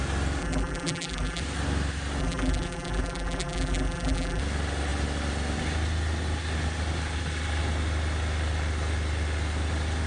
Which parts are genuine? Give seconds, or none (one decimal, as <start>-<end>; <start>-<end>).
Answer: 0.0-0.4; 1.4-2.2; 4.4-10.1